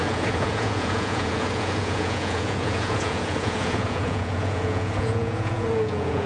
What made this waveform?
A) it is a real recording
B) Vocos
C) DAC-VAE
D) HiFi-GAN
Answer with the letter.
B